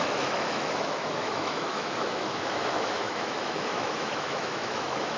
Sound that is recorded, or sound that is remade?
remade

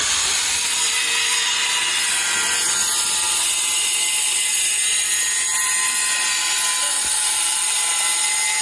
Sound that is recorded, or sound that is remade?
recorded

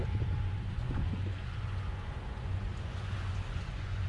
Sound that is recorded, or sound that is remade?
remade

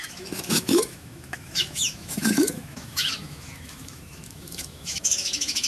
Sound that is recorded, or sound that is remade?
remade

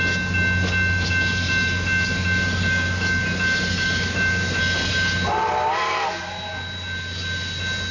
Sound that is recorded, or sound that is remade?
recorded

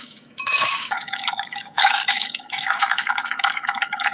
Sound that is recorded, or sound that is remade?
remade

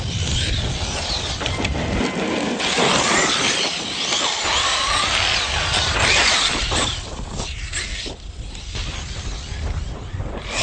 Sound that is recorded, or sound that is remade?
recorded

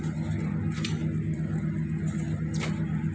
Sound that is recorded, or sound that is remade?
recorded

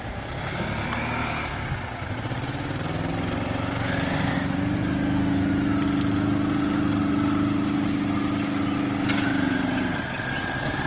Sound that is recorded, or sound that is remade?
recorded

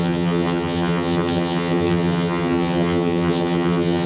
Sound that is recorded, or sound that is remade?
remade